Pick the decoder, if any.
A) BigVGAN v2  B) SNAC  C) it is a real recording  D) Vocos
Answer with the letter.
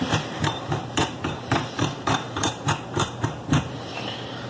A